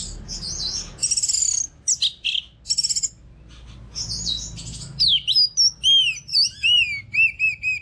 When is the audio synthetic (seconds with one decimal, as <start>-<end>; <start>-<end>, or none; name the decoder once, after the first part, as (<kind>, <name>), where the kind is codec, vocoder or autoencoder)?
none